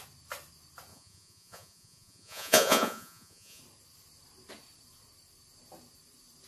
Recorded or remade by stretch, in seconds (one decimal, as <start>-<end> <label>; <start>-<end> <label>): 0.0-0.9 recorded; 0.9-3.6 remade; 3.6-6.5 recorded